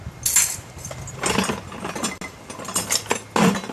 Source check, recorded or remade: recorded